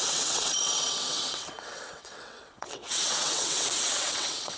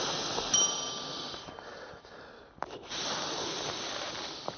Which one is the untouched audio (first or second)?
second